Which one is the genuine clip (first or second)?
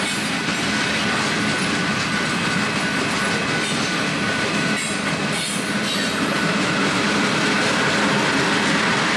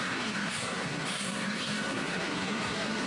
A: first